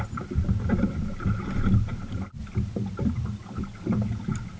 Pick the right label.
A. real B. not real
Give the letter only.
A